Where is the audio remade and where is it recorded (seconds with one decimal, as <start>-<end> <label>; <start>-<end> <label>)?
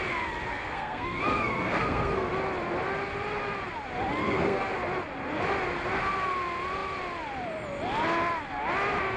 0.0-0.5 recorded; 0.5-2.3 remade; 2.3-4.2 recorded; 4.2-4.7 remade; 4.7-9.2 recorded